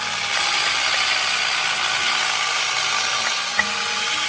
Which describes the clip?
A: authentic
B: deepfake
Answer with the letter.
A